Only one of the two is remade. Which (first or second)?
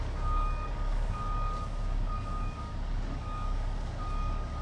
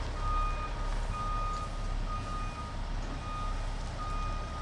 first